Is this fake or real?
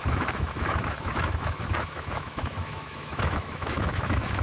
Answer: fake